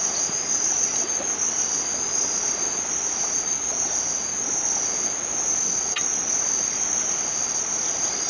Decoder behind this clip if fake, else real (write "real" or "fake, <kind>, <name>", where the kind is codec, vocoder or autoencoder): real